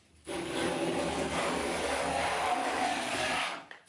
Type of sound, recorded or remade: remade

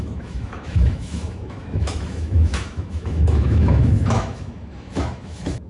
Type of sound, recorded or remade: remade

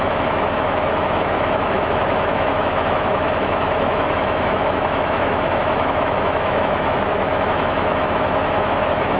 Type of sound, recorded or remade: remade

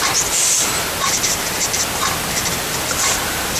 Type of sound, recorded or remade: recorded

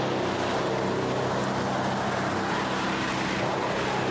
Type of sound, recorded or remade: recorded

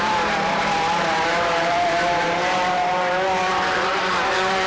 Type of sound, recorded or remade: remade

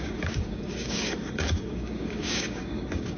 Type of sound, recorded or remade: remade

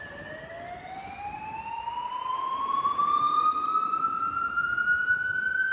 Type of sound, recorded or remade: recorded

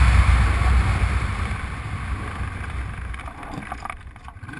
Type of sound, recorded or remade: recorded